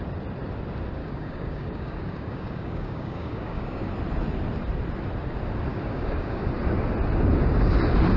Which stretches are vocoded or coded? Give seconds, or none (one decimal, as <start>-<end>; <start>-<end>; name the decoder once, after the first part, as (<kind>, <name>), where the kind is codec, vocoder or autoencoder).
1.0-3.9 (codec, DAC); 5.7-6.5